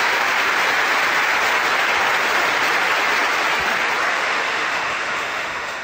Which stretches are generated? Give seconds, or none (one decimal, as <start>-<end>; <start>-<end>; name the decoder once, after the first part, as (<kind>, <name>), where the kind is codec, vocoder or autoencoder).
0.0-0.6 (autoencoder, DAC-VAE); 4.1-5.8